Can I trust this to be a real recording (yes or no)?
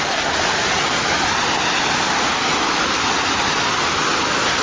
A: yes